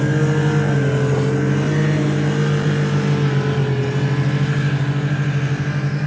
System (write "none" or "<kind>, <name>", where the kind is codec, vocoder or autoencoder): none